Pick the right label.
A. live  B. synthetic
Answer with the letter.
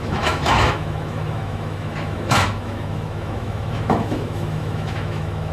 B